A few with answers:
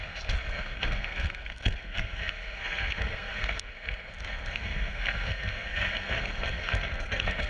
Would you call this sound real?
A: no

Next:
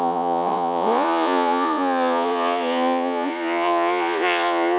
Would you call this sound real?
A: no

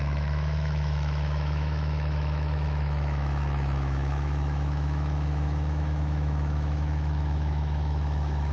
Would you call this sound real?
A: no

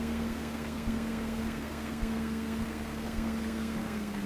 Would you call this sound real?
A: no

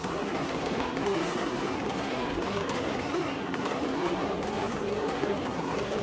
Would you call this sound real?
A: no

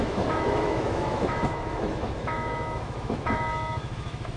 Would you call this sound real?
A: no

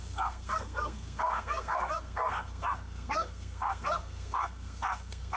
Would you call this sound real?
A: no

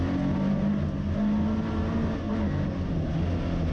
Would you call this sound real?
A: yes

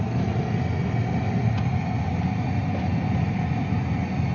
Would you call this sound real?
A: yes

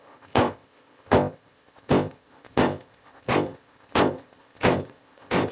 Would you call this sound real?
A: no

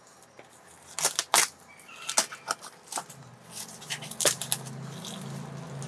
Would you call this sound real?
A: yes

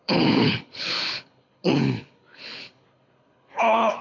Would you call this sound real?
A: no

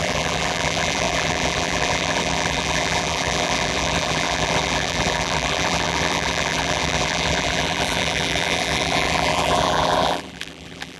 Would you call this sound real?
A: no